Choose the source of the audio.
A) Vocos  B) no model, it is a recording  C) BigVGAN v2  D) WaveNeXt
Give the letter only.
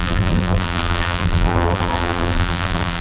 C